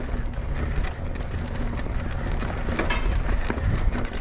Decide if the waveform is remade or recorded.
recorded